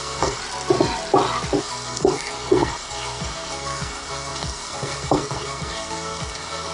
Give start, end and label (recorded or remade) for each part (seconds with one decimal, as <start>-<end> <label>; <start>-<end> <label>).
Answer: 0.0-0.4 remade; 0.4-1.6 recorded; 1.6-6.7 remade